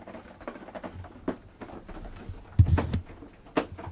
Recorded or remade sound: recorded